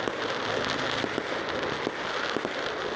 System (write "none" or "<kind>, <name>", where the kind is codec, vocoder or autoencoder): none